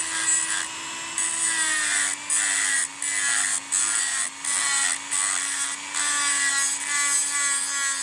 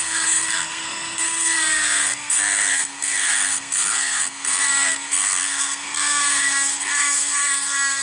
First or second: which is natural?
first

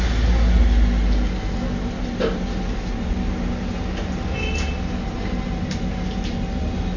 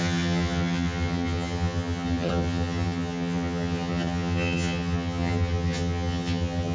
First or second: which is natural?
first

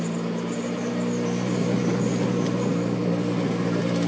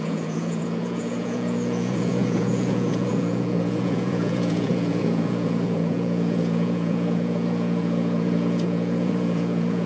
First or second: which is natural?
first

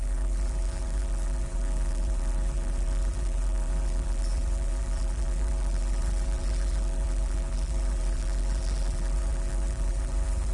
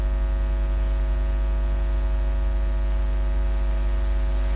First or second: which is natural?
second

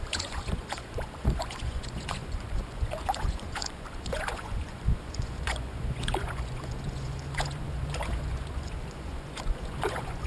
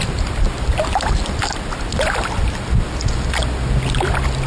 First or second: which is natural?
second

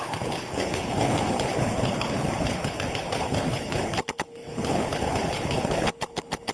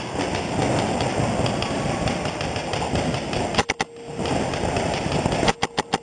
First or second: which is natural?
second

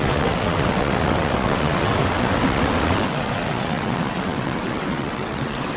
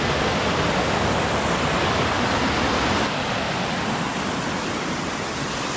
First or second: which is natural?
second